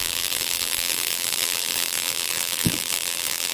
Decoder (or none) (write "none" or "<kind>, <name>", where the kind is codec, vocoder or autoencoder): vocoder, BigVGAN v2